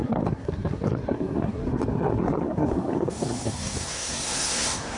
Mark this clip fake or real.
fake